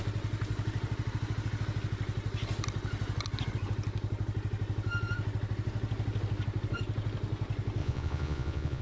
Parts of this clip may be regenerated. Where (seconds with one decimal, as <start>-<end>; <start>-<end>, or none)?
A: 7.8-8.8